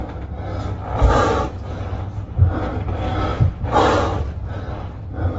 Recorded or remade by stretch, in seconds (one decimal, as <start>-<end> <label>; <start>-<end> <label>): 0.0-5.4 recorded